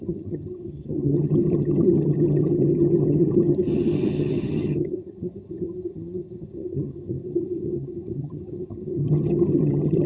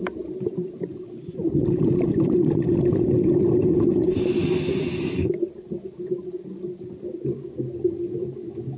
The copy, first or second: first